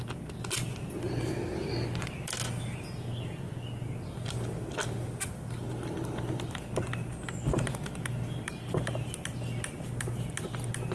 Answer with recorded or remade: recorded